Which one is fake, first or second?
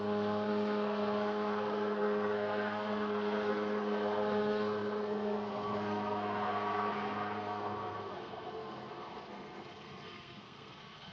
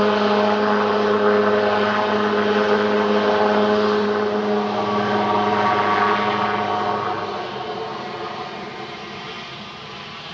first